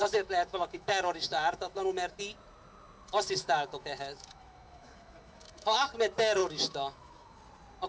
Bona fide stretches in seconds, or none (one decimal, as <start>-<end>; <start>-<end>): 2.2-3.1; 5.9-6.4; 7.4-7.9